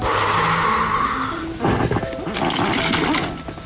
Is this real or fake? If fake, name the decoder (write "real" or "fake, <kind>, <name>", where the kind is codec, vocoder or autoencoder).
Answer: real